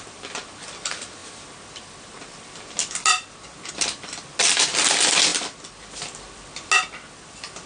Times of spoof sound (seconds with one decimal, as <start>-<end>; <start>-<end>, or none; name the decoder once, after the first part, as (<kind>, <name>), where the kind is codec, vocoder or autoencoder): none